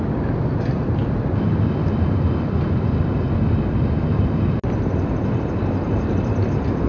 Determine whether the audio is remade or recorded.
recorded